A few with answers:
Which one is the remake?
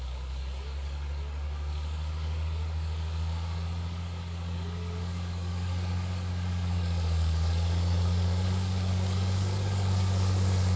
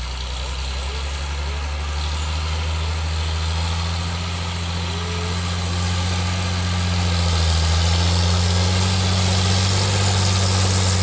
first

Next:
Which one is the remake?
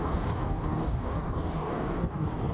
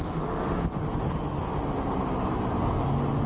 first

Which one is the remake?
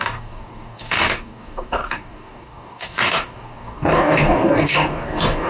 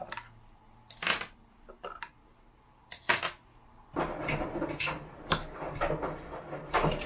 first